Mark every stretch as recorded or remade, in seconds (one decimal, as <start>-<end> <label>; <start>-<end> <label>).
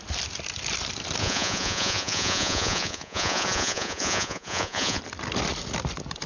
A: 0.0-1.2 recorded; 1.2-5.0 remade; 5.0-6.3 recorded